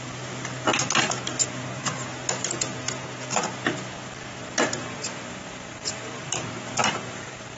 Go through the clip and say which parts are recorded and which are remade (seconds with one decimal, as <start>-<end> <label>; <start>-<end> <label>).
0.0-4.3 recorded; 4.3-7.6 remade